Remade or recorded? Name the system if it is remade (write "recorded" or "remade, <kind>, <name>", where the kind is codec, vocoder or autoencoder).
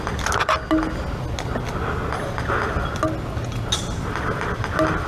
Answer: recorded